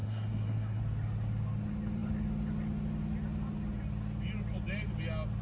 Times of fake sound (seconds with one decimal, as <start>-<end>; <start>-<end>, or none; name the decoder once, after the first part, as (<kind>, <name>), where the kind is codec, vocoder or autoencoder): 0.0-0.8 (codec, SNAC)